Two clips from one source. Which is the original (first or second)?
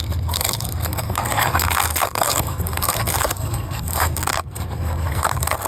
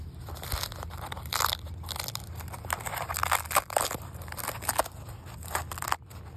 second